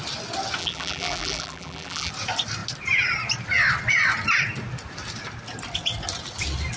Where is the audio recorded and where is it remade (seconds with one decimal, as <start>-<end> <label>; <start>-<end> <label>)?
0.0-0.6 recorded; 0.6-2.1 remade; 2.1-6.8 recorded

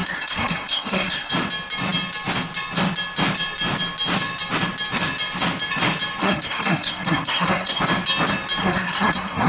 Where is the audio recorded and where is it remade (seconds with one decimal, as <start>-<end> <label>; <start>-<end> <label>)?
0.0-1.3 remade; 1.3-6.2 recorded; 6.2-7.8 remade; 7.8-8.6 recorded; 8.6-9.5 remade

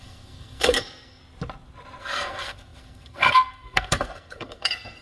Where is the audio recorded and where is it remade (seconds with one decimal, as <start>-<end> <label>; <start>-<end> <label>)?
0.0-1.2 remade; 1.2-2.0 recorded; 2.0-5.0 remade

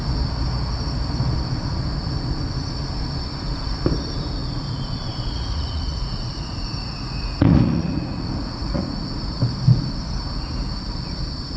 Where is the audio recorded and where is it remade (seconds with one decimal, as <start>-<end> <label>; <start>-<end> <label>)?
0.0-4.4 recorded; 4.4-9.5 remade; 9.5-11.6 recorded

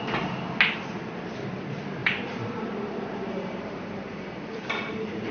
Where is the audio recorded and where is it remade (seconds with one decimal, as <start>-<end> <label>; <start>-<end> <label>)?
0.0-2.0 recorded; 2.0-5.3 remade

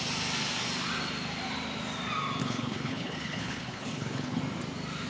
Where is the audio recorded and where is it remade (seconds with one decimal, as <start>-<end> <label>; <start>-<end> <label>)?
0.0-2.4 recorded; 2.4-4.4 remade; 4.4-5.1 recorded

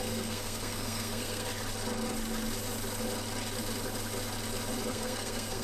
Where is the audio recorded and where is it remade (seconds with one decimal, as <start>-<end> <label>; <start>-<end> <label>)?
0.0-1.5 remade; 1.5-4.9 recorded; 4.9-5.6 remade